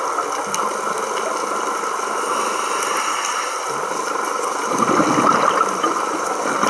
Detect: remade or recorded recorded